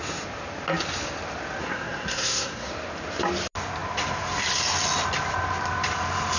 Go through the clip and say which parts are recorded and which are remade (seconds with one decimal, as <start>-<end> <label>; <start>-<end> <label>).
0.0-1.6 recorded; 1.6-2.7 remade; 2.7-6.4 recorded